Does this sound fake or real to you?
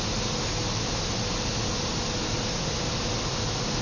real